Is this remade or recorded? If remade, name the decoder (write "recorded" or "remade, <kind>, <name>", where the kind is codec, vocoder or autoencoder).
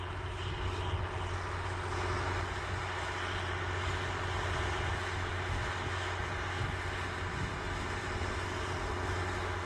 recorded